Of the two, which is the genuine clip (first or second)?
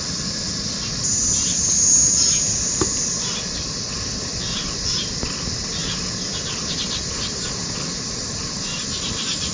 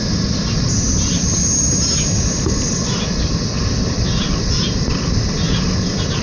second